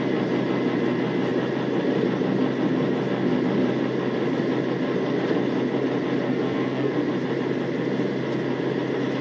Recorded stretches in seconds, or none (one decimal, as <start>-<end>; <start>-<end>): 0.0-6.3; 6.9-9.2